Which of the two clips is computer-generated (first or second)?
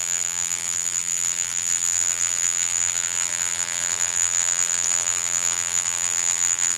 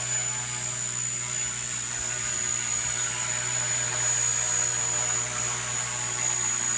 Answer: first